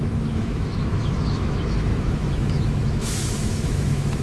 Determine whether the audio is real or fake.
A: fake